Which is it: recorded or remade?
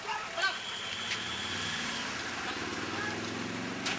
recorded